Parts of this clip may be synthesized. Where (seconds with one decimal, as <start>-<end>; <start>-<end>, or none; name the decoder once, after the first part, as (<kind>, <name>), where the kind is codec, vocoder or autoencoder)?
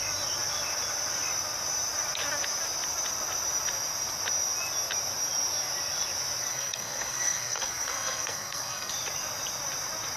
6.5-8.9 (codec, SNAC)